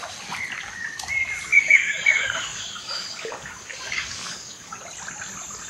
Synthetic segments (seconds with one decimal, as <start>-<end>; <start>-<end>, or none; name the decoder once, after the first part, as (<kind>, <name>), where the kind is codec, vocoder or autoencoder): 1.5-4.8 (codec, DAC)